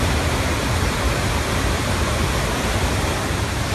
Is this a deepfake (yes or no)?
yes